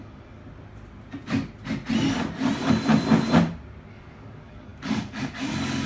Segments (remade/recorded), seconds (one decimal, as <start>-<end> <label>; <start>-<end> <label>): 0.0-0.4 remade; 0.4-3.9 recorded; 3.9-5.9 remade